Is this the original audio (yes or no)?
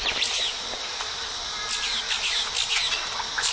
yes